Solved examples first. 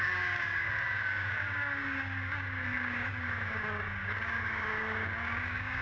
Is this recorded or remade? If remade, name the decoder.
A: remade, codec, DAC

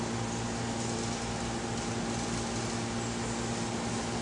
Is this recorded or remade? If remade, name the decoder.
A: recorded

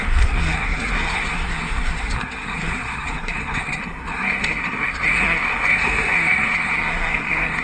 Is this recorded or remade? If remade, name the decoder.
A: remade, codec, SNAC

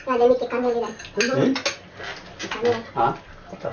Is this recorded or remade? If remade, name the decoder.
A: recorded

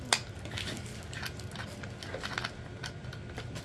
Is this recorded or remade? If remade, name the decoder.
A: recorded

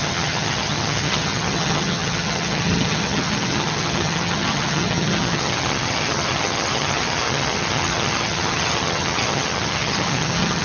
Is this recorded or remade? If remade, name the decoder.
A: remade, vocoder, HiFi-GAN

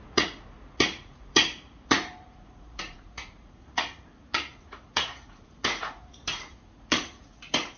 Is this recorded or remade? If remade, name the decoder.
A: remade, vocoder, Vocos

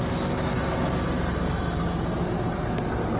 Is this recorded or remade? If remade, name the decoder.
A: recorded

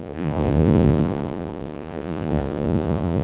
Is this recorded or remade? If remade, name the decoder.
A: remade, vocoder, Vocos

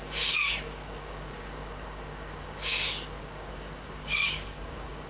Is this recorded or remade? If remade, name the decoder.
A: remade, codec, DAC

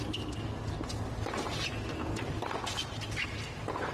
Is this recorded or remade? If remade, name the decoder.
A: recorded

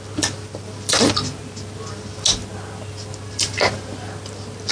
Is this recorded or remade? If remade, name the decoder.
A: recorded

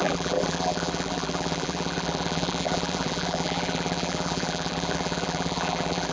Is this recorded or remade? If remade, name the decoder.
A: remade, vocoder, BigVGAN v2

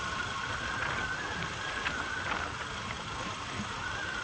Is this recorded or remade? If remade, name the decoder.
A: recorded